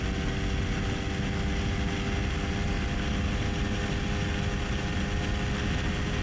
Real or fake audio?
real